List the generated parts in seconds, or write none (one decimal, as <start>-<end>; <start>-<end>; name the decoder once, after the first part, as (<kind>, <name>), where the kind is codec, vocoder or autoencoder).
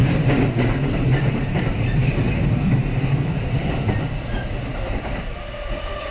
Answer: 0.0-2.4 (vocoder, BigVGAN v2)